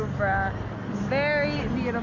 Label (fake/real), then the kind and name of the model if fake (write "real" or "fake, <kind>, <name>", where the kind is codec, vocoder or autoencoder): real